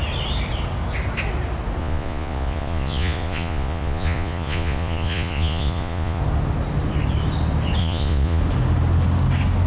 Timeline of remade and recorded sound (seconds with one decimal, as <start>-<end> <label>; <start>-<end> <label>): 0.0-1.8 recorded; 1.8-6.2 remade; 6.2-7.8 recorded; 7.8-8.4 remade; 8.4-9.7 recorded